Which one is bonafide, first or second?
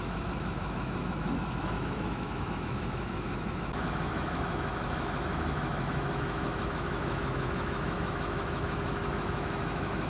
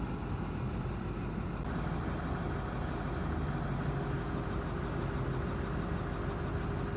second